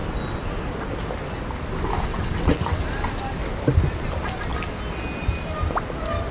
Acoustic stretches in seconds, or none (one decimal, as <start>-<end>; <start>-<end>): 0.0-2.1; 2.8-6.3